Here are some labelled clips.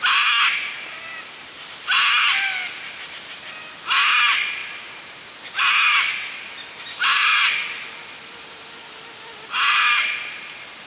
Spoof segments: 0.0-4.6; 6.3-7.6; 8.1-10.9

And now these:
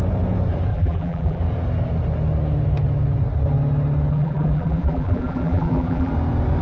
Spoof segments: 0.7-1.4; 4.1-6.1

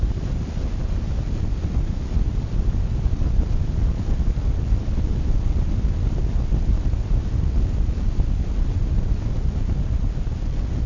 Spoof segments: none